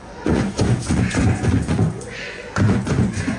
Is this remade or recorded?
remade